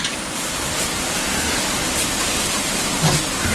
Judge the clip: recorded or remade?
recorded